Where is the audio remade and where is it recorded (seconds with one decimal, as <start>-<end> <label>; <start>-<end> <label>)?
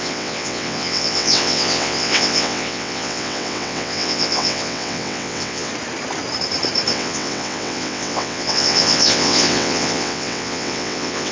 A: 0.0-5.7 remade; 5.7-6.9 recorded; 6.9-11.3 remade